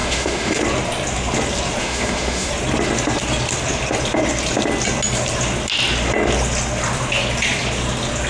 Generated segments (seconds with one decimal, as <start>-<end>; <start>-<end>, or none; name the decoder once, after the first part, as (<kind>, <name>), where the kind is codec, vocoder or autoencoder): 0.0-0.6 (autoencoder, DAC-VAE); 1.8-2.5